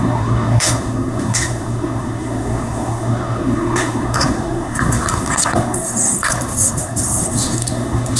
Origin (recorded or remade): remade